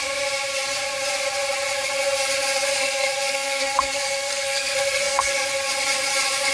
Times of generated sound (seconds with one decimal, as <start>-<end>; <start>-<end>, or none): 2.7-5.5